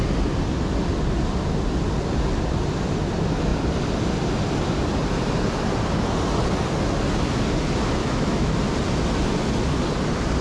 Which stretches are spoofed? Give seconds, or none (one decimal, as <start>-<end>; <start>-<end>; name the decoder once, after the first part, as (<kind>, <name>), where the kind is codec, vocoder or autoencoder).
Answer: 8.0-8.6 (autoencoder, DAC-VAE)

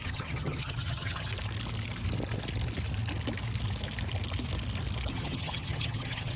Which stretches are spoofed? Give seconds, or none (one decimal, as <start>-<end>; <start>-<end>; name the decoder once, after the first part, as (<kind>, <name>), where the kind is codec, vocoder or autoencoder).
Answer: 0.0-1.3 (vocoder, HiFi-GAN); 5.1-6.4

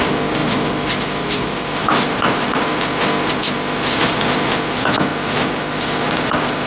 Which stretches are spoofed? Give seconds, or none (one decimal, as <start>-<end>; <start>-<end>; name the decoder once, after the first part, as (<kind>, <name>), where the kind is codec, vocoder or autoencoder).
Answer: 1.8-2.7 (vocoder, BigVGAN v2)

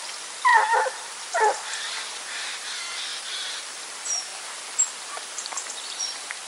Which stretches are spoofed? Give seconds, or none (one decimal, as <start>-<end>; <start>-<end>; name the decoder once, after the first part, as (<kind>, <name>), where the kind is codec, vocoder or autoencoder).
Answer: 0.0-3.1 (vocoder, BigVGAN v2); 3.7-4.3; 5.7-6.5

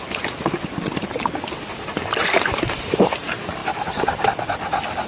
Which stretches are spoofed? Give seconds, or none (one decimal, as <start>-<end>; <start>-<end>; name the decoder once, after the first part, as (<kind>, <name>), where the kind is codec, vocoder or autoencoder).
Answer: 2.2-3.2 (vocoder, BigVGAN v2); 3.6-4.2

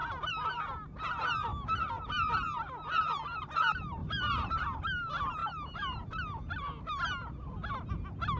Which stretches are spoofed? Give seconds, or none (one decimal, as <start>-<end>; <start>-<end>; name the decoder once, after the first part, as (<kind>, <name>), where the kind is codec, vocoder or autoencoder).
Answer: 0.0-0.6 (vocoder, BigVGAN v2); 1.5-2.3; 4.0-4.6; 5.4-6.0